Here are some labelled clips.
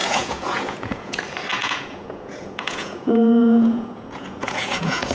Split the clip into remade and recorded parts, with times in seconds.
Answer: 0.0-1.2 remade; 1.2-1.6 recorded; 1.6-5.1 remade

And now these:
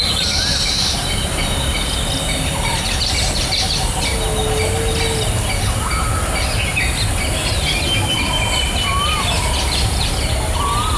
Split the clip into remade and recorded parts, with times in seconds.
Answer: 0.0-11.0 recorded

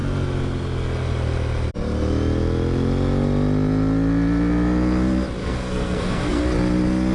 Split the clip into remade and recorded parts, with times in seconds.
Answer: 0.0-5.4 recorded; 5.4-6.4 remade; 6.4-7.1 recorded

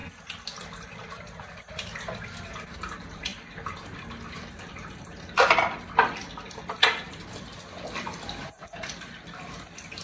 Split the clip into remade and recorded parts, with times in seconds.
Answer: 0.0-1.7 recorded; 1.7-10.0 remade

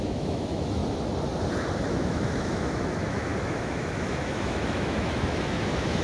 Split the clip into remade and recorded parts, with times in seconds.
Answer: 0.0-0.8 remade; 0.8-1.9 recorded; 1.9-6.0 remade

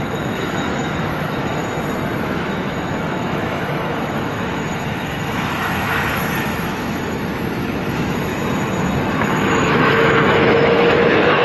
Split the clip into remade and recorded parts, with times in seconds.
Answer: 0.0-1.6 remade; 1.6-2.2 recorded; 2.2-8.3 remade; 8.3-9.1 recorded; 9.1-11.4 remade